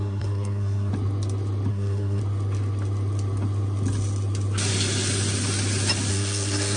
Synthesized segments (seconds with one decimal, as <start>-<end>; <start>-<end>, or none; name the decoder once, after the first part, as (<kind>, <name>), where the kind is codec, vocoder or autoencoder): 0.0-0.9 (codec, SNAC); 1.7-2.2; 6.1-6.8